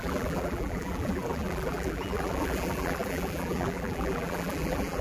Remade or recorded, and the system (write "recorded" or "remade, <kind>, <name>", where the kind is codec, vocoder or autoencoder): remade, vocoder, BigVGAN v2